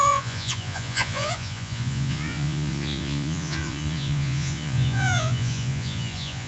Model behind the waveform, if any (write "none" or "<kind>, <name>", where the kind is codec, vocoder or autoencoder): vocoder, Vocos